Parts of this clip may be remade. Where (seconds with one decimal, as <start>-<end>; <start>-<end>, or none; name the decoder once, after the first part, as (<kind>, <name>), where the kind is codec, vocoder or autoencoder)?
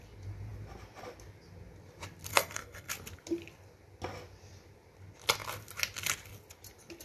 2.3-2.9 (codec, SNAC)